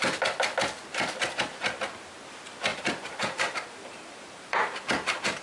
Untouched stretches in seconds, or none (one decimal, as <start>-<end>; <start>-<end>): 0.0-2.7; 4.8-5.4